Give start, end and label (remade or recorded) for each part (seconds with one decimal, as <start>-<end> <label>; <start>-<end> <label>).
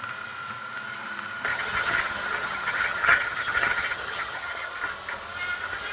0.0-1.5 recorded; 1.5-4.7 remade; 4.7-5.9 recorded